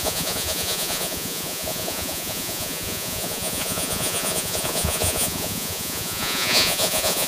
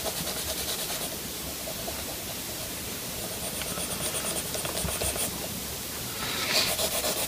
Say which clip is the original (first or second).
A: second